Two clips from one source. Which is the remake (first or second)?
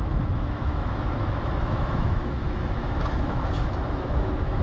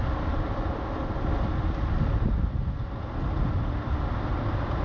first